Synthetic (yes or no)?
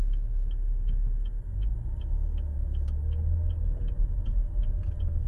no